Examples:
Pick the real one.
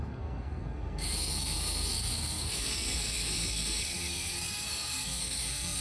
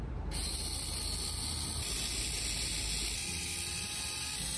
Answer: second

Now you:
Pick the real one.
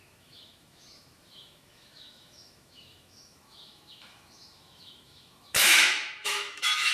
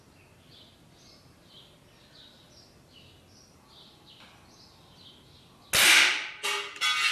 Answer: second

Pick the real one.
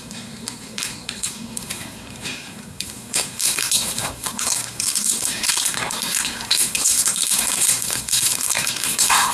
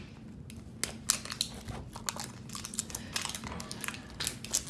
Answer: second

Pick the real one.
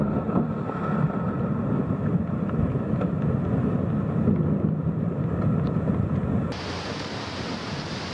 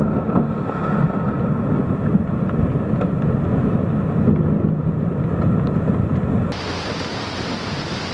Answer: second